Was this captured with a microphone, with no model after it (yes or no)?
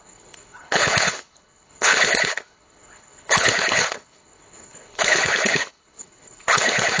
no